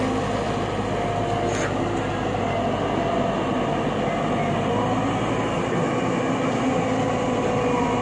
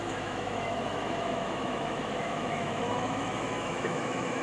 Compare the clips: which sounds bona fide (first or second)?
first